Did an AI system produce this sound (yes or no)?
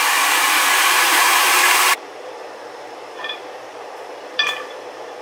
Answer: yes